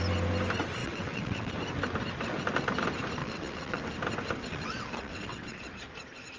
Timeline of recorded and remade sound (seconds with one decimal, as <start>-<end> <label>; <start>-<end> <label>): 0.0-0.8 recorded; 0.8-1.5 remade; 1.5-3.2 recorded; 3.2-3.8 remade; 3.8-4.4 recorded; 4.4-5.7 remade; 5.7-6.4 recorded